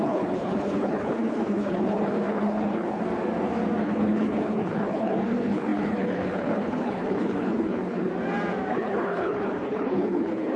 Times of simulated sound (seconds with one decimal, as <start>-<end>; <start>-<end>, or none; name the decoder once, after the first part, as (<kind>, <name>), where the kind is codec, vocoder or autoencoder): 0.0-3.0 (codec, HILCodec); 3.8-8.1; 8.7-10.6